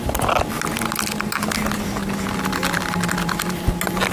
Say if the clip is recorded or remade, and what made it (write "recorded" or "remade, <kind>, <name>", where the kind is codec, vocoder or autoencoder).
recorded